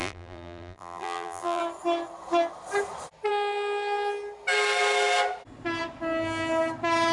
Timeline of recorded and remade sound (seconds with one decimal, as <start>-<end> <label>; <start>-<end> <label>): 0.0-1.6 remade; 1.6-7.1 recorded